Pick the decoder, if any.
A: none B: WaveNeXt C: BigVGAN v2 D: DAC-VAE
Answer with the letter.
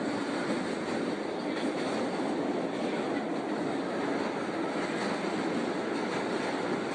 A